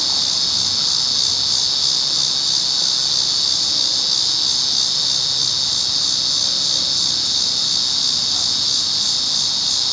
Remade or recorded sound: recorded